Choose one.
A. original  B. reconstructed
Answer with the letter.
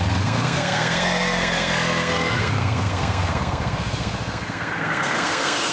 B